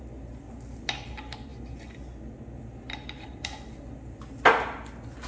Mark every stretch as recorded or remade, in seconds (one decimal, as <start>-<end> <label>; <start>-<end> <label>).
0.0-5.3 recorded